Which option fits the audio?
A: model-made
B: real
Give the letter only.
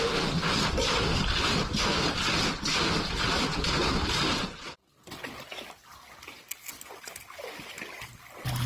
B